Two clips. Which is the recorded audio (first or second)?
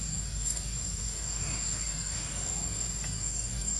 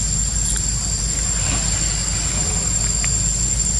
second